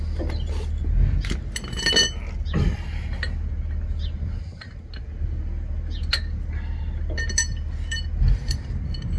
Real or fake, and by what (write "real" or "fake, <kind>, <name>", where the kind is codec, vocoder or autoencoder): real